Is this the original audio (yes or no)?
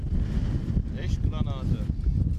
yes